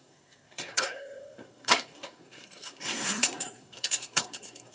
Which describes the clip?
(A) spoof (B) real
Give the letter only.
A